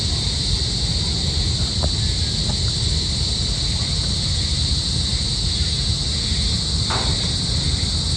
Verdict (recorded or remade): recorded